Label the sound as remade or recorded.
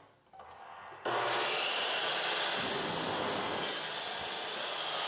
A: recorded